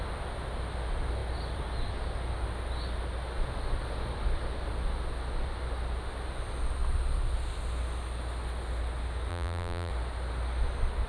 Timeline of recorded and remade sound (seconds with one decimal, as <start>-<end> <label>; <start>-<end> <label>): 0.0-9.3 recorded; 9.3-9.9 remade; 9.9-11.1 recorded